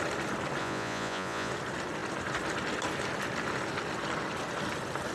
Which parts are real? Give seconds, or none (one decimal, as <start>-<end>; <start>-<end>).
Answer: 0.0-0.6; 1.5-5.1